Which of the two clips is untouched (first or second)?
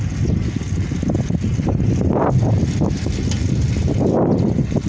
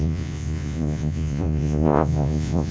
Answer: first